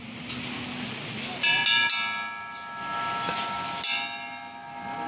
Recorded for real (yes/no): yes